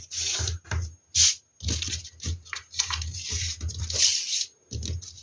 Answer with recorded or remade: recorded